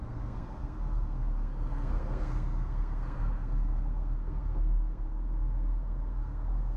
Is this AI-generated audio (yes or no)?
yes